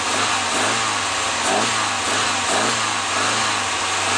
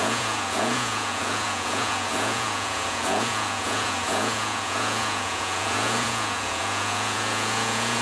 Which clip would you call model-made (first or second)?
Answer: second